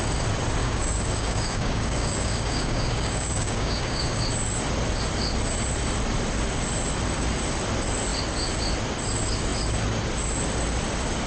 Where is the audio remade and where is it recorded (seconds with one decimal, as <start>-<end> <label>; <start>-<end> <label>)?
0.0-0.6 recorded; 0.6-4.2 remade; 4.2-11.3 recorded